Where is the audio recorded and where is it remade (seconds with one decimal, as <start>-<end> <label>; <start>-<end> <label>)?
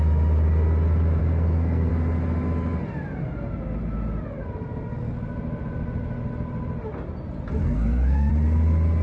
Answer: 0.0-1.2 recorded; 1.2-1.9 remade; 1.9-7.6 recorded; 7.6-8.3 remade; 8.3-9.0 recorded